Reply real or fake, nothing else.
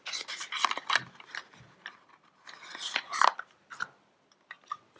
real